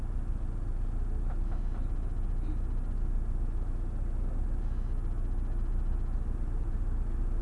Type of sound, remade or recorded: recorded